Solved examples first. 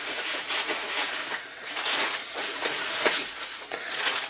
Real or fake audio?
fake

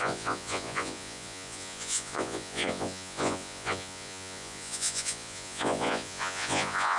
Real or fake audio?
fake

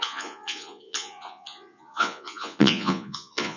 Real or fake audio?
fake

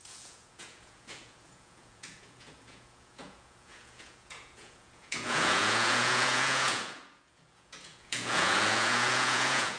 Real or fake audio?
fake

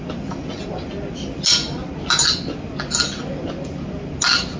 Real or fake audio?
real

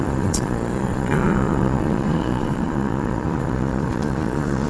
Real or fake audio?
fake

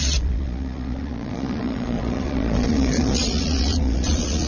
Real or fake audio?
fake